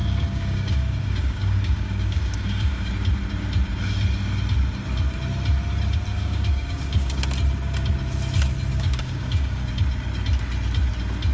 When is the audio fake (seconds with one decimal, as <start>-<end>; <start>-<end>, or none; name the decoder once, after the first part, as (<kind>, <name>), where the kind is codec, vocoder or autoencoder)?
0.0-2.9 (codec, DAC); 6.1-7.2; 8.7-9.7

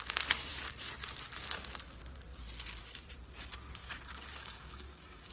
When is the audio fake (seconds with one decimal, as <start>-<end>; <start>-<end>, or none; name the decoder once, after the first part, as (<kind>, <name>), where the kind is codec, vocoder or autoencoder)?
3.8-5.3 (codec, DAC)

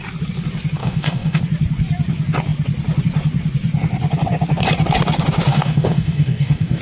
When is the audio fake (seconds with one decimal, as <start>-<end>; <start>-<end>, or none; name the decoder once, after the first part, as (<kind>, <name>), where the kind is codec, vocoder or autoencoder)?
0.8-1.4 (codec, DAC); 5.5-6.8

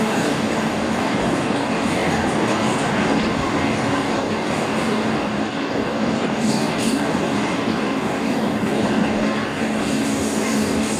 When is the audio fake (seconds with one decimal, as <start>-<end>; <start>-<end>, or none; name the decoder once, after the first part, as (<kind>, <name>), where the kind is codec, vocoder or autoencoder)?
0.0-11.0 (codec, DAC)

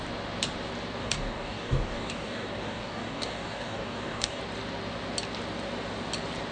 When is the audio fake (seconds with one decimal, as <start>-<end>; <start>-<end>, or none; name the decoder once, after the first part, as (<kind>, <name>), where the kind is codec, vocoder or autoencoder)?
1.0-4.4 (codec, DAC)

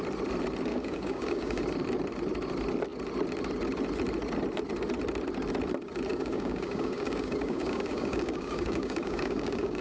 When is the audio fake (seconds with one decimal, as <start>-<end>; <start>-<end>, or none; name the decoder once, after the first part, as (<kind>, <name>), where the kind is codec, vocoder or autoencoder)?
0.7-1.6 (codec, DAC); 6.1-9.8

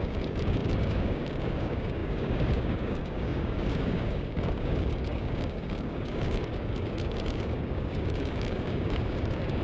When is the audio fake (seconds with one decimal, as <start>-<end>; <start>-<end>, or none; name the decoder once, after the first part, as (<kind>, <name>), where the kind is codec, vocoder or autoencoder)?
0.0-9.6 (codec, DAC)